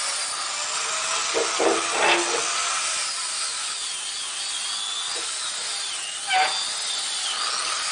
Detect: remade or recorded recorded